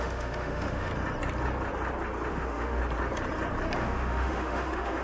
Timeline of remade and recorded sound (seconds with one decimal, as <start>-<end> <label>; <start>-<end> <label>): 0.0-0.9 remade; 0.9-2.3 recorded; 2.3-2.8 remade; 2.8-3.8 recorded; 3.8-5.0 remade